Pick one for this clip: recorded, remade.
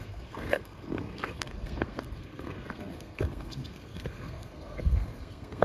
remade